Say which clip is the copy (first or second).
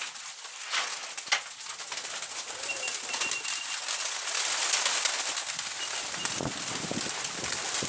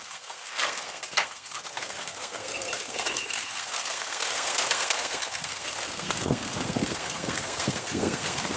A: second